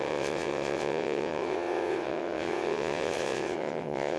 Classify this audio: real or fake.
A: fake